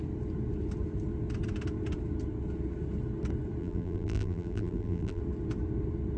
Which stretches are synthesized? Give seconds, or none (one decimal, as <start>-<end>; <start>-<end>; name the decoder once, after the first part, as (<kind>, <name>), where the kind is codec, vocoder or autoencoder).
3.6-5.2 (vocoder, BigVGAN v2)